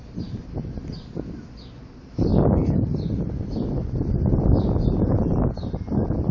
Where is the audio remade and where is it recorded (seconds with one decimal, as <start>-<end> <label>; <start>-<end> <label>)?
0.0-2.3 recorded; 2.3-4.8 remade; 4.8-6.3 recorded